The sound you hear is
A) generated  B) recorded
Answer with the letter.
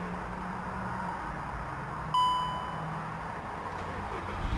B